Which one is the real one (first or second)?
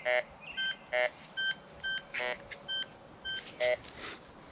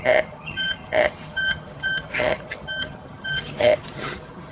first